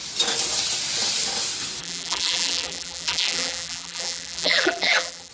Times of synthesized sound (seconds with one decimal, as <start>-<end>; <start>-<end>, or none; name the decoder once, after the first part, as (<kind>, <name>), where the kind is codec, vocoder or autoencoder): 1.8-5.3 (vocoder, BigVGAN v2)